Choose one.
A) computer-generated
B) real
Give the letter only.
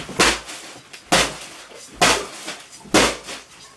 B